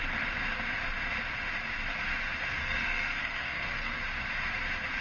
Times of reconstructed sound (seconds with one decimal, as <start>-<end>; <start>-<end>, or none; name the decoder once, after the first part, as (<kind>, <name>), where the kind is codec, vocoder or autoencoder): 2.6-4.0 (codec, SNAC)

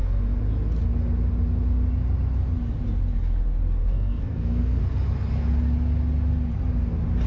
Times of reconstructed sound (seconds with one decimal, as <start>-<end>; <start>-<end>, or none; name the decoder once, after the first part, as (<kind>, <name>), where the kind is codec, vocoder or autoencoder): 3.8-4.8 (codec, SNAC)

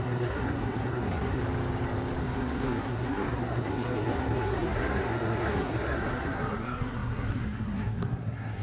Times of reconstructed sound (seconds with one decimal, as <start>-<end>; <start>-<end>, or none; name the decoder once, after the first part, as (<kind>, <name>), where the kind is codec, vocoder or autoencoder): 0.0-1.4 (codec, SNAC); 2.2-8.6

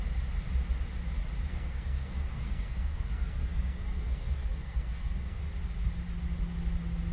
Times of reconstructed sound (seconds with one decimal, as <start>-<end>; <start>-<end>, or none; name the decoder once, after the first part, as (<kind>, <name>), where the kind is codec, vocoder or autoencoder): 1.5-5.4 (codec, SNAC)

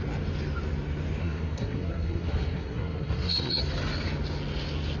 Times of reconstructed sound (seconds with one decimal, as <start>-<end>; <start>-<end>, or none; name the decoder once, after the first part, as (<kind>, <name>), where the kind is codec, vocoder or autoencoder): 1.2-3.6 (codec, SNAC)

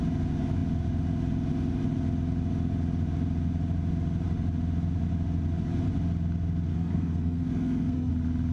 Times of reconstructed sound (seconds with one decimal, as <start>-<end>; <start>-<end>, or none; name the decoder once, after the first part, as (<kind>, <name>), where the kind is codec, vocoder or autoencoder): 6.7-8.1 (codec, SNAC)